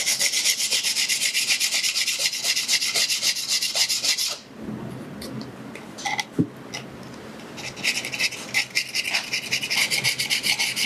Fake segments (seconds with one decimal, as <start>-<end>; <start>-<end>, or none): none